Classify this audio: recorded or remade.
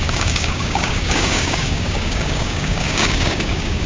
remade